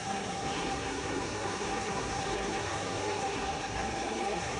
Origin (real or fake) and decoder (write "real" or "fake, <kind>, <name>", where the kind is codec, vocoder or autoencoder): fake, codec, SNAC